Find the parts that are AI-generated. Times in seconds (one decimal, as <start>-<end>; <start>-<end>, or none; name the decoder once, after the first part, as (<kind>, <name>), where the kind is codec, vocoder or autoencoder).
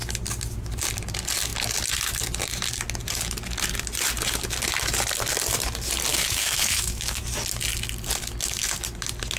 6.1-7.2 (autoencoder, DAC-VAE)